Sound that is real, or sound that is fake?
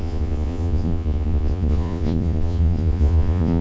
fake